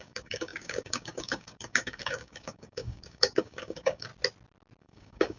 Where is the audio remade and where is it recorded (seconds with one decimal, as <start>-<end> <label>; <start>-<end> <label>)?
0.0-4.1 remade; 4.1-4.8 recorded; 4.8-5.4 remade